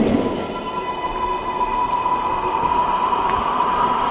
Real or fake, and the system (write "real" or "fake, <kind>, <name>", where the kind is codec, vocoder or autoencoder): real